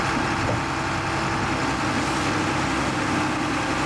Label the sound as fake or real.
real